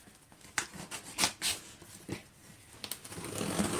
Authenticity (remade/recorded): recorded